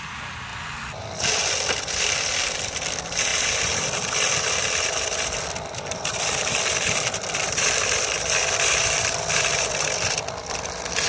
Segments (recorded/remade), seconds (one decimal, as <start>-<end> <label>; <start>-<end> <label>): 0.0-0.5 remade; 0.5-1.7 recorded; 1.7-11.1 remade